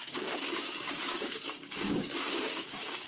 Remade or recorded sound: remade